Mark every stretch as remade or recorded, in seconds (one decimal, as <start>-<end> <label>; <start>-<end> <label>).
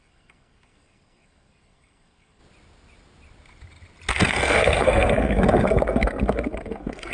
0.0-2.4 remade; 2.4-4.1 recorded; 4.1-7.1 remade